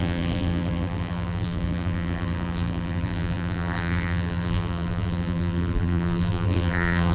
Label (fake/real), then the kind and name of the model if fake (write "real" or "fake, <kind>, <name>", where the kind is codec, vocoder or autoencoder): fake, vocoder, BigVGAN v2